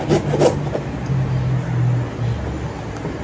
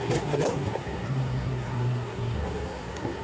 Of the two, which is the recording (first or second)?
first